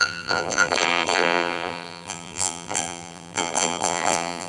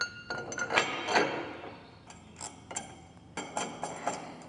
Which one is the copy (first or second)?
first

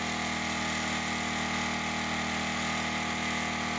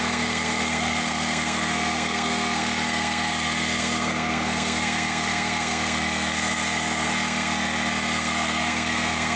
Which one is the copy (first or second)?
second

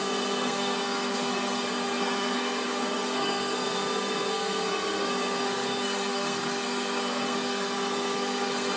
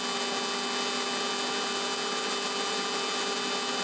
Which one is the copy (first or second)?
first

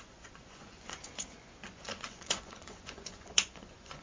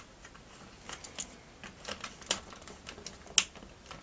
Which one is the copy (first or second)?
first